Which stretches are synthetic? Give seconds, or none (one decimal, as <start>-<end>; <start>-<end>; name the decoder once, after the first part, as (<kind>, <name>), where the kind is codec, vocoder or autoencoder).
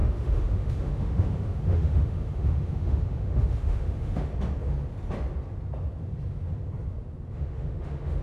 0.0-4.3 (autoencoder, DAC-VAE); 7.3-8.2